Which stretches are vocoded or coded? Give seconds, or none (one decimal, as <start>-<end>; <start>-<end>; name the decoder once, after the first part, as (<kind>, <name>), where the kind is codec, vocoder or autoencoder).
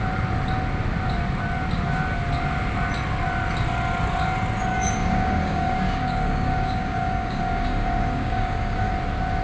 4.7-8.9 (codec, DAC)